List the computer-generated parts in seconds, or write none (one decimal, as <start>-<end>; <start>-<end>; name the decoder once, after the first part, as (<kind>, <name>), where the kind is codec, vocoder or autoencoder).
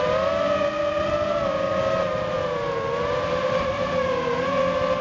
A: 1.7-4.5 (vocoder, BigVGAN v2)